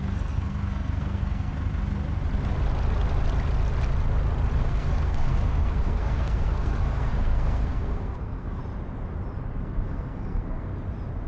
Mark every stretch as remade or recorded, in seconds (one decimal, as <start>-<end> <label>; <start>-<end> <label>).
0.0-1.5 remade; 1.5-4.6 recorded; 4.6-8.6 remade; 8.6-9.6 recorded; 9.6-10.7 remade; 10.7-11.3 recorded